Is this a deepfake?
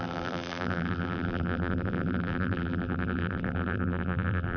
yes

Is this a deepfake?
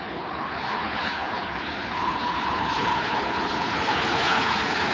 yes